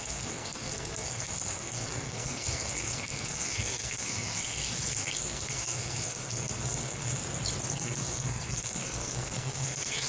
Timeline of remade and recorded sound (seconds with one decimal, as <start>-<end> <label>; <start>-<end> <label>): 0.0-7.2 remade; 7.2-7.7 recorded; 7.7-10.1 remade